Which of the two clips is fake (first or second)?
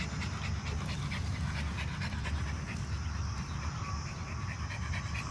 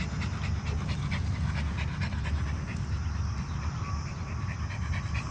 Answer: first